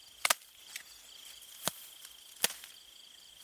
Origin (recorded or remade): recorded